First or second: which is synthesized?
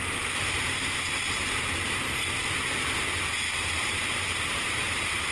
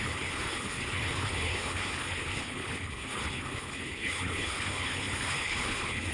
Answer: second